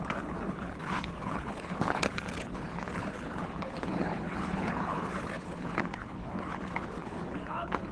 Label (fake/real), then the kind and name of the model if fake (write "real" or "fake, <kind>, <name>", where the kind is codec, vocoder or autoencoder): fake, codec, HILCodec